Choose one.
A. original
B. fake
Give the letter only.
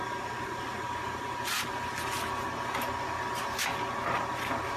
A